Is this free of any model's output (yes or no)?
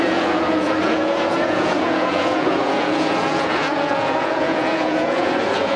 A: no